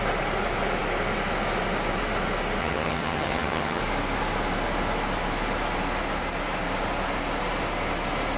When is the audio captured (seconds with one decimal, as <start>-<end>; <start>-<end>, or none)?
0.0-2.6; 3.8-8.4